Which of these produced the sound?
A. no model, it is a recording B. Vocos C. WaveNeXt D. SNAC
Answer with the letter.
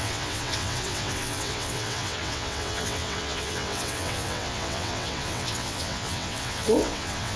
C